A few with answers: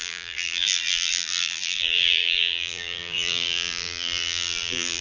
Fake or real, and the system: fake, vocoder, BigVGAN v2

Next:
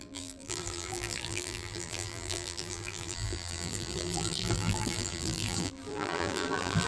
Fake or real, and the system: fake, vocoder, BigVGAN v2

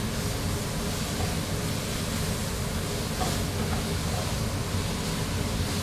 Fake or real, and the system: real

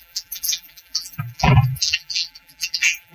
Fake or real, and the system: fake, vocoder, BigVGAN v2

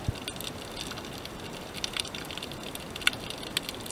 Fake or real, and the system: real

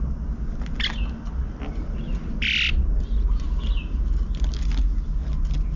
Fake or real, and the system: real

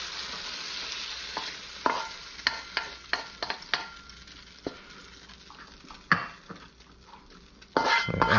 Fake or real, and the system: real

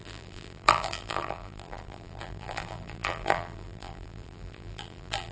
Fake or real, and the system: fake, vocoder, BigVGAN v2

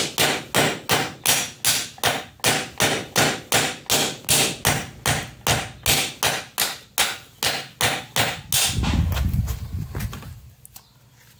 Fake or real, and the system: real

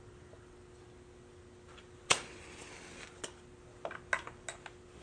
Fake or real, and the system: real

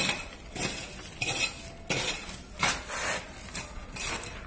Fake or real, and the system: real